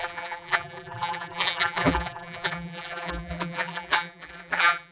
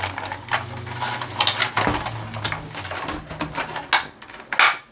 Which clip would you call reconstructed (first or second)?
first